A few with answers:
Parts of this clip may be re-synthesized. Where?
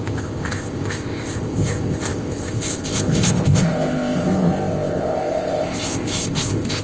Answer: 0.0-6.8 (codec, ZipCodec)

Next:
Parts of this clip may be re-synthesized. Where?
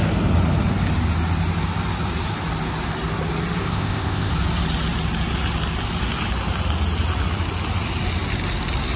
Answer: 3.6-4.3 (codec, ZipCodec)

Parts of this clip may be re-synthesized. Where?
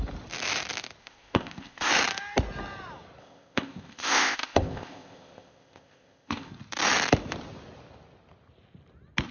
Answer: 1.0-1.9 (codec, ZipCodec); 3.2-6.5